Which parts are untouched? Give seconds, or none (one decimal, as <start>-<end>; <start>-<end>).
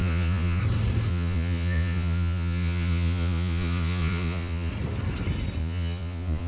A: 0.6-1.1; 4.7-5.6